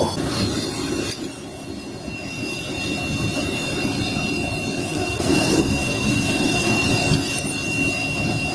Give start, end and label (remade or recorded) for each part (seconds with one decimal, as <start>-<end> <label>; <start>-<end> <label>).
0.0-4.8 recorded; 4.8-6.9 remade; 6.9-8.5 recorded